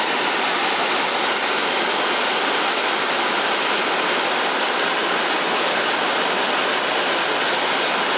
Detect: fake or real real